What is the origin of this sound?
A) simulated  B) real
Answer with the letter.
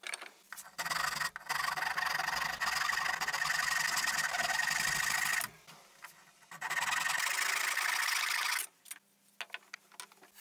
B